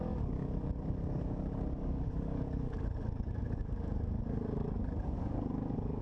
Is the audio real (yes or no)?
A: no